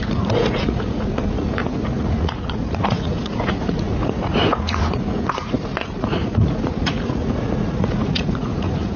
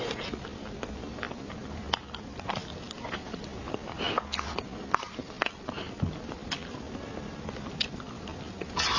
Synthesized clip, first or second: first